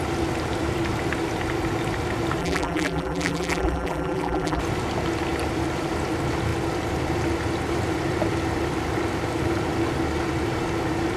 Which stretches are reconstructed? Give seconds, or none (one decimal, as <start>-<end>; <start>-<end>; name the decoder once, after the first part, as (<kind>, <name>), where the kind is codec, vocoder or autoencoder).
2.4-4.6 (vocoder, BigVGAN v2)